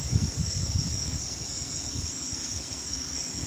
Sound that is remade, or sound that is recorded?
remade